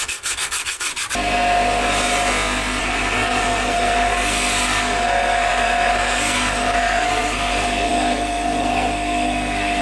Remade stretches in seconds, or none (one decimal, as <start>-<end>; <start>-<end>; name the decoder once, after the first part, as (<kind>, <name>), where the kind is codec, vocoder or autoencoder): 0.0-0.9 (codec, SNAC); 2.8-9.8